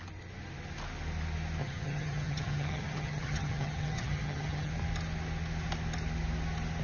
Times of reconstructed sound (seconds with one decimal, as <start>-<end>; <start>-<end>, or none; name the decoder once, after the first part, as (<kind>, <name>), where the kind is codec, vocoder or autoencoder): 1.6-4.7 (vocoder, HiFi-GAN)